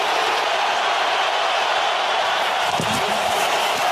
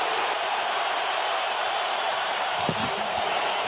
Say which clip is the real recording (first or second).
first